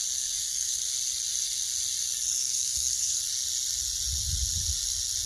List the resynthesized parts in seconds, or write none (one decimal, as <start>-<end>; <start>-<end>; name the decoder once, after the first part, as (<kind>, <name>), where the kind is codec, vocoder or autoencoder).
0.4-0.9 (codec, SNAC); 2.4-3.2